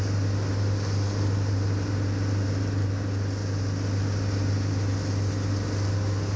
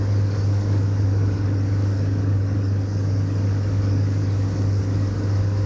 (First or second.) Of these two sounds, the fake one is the second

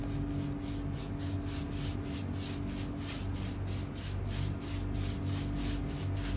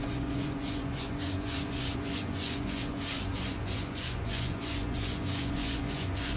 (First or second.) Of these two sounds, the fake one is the second